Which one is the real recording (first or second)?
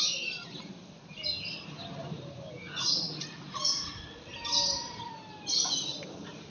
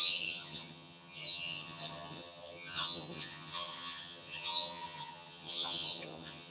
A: first